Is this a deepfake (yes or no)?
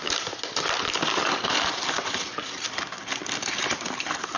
no